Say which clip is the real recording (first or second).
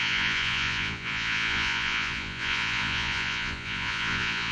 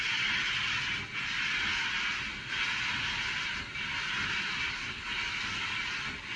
second